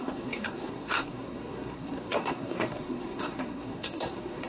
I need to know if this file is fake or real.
fake